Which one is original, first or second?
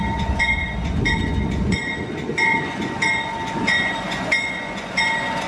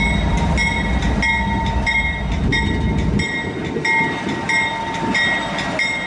second